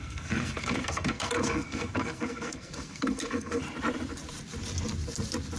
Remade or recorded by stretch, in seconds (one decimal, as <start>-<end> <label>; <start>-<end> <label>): 0.0-3.6 remade; 3.6-5.6 recorded